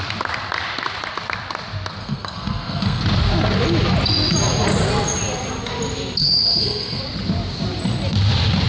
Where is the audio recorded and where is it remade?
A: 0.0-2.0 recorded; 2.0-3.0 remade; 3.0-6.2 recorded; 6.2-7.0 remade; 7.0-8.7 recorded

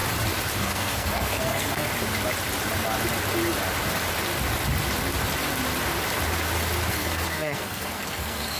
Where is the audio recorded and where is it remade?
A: 0.0-0.6 recorded; 0.6-1.9 remade; 1.9-6.9 recorded; 6.9-8.6 remade

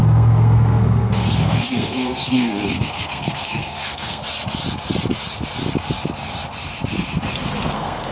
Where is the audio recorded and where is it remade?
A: 0.0-4.2 remade; 4.2-7.6 recorded; 7.6-8.1 remade

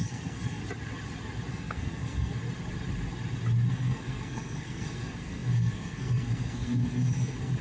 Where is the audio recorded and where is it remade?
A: 0.0-0.6 remade; 0.6-1.5 recorded; 1.5-2.4 remade; 2.4-3.7 recorded; 3.7-7.6 remade